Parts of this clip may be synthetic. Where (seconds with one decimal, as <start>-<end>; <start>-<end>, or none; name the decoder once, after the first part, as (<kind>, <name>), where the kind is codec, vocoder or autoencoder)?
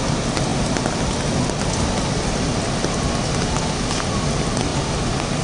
none